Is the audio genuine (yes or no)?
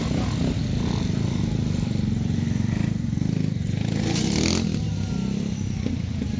yes